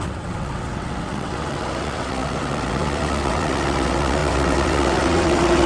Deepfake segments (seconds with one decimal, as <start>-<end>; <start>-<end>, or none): 0.0-5.7